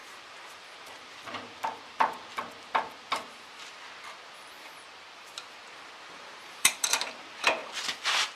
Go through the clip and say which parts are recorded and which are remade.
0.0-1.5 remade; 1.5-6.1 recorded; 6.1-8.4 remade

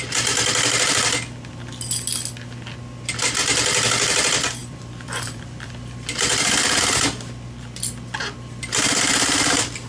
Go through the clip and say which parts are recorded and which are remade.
0.0-4.6 recorded; 4.6-6.3 remade; 6.3-9.9 recorded

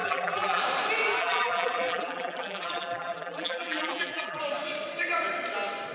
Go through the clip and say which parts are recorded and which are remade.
0.0-0.6 remade; 0.6-1.2 recorded; 1.2-4.4 remade; 4.4-5.9 recorded

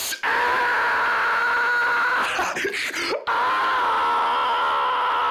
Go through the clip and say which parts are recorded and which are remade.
0.0-0.6 remade; 0.6-5.3 recorded

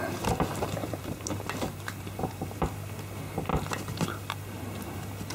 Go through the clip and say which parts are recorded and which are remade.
0.0-0.8 recorded; 0.8-2.5 remade; 2.5-5.3 recorded

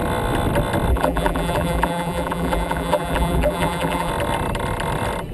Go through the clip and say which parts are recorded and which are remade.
0.0-0.9 recorded; 0.9-4.1 remade; 4.1-5.3 recorded